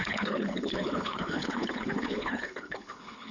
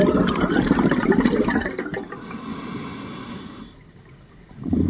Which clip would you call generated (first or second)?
first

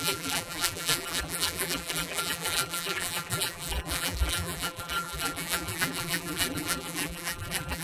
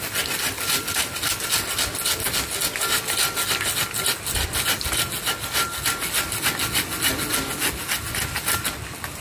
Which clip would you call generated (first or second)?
first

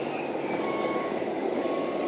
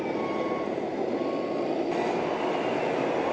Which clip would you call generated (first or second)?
first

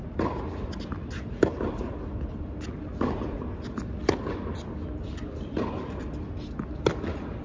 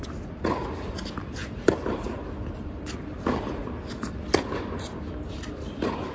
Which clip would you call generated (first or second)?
second